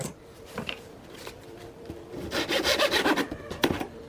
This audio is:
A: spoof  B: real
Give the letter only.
A